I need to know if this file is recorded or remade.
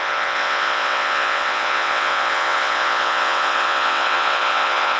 remade